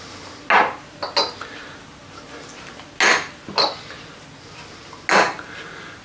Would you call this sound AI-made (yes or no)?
no